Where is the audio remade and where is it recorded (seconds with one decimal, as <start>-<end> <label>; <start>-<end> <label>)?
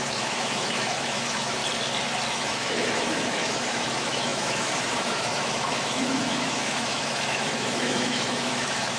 0.0-1.6 remade; 1.6-2.3 recorded; 2.3-9.0 remade